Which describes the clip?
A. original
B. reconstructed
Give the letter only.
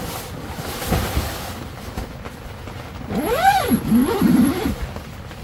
A